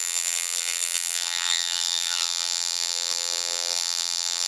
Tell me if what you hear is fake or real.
fake